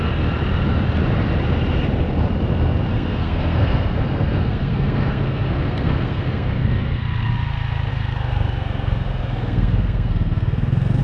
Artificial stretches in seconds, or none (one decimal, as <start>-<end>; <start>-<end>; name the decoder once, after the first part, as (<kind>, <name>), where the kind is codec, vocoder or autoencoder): 2.9-7.3 (codec, SNAC); 7.9-11.0